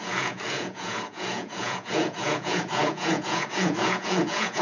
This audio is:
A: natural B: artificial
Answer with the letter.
B